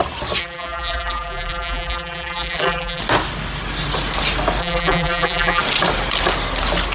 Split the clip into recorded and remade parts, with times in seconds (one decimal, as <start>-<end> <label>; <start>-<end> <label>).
0.0-0.4 recorded; 0.4-3.0 remade; 3.0-4.6 recorded; 4.6-5.6 remade; 5.6-6.9 recorded